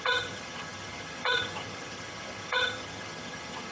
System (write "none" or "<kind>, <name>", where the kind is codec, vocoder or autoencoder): vocoder, HiFi-GAN